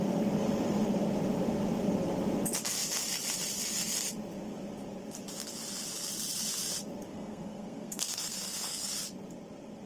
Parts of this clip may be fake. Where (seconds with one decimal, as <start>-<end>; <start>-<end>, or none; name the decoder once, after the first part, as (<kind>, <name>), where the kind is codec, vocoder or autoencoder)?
7.1-8.9 (codec, SNAC)